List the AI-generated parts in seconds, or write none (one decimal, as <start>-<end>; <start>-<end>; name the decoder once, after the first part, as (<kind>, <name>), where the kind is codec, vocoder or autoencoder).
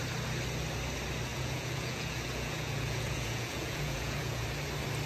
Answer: 1.3-4.4 (vocoder, Vocos)